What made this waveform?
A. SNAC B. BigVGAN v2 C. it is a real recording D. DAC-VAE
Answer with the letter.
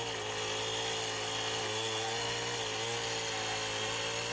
C